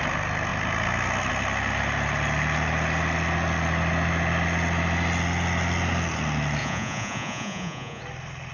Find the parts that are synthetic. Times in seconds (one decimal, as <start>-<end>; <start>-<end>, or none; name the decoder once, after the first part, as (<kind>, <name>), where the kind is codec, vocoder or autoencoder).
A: 6.6-8.0 (vocoder, Vocos)